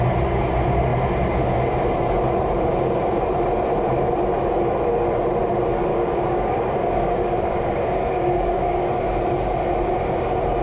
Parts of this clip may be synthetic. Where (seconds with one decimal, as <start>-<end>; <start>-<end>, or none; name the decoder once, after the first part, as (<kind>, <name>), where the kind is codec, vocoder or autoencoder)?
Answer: 5.9-8.9 (codec, DAC)